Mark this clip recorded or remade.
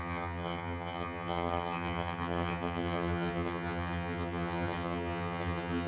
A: remade